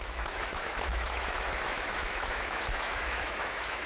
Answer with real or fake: fake